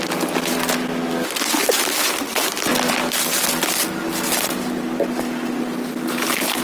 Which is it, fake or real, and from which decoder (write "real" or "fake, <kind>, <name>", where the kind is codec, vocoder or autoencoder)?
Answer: real